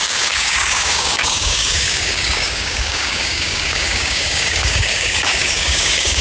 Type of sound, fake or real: fake